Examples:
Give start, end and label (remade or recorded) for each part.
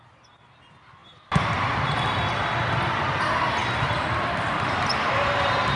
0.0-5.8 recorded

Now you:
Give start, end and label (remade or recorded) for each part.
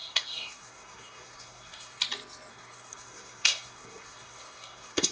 0.0-2.0 remade; 2.0-2.5 recorded; 2.5-5.1 remade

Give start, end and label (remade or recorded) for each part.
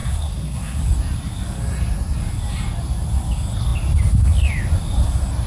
0.0-0.8 remade; 0.8-5.5 recorded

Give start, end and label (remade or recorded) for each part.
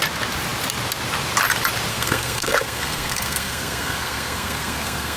0.0-1.9 recorded; 1.9-5.2 remade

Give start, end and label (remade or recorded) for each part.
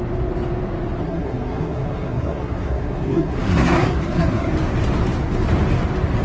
0.0-1.0 recorded; 1.0-4.5 remade; 4.5-6.2 recorded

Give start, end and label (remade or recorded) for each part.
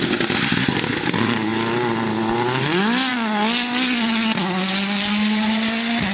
0.0-6.1 recorded